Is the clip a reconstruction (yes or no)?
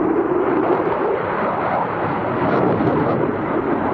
yes